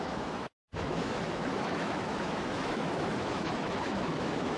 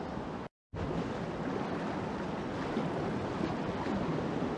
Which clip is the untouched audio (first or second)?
second